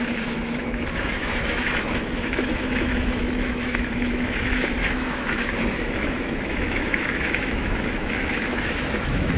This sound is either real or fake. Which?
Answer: fake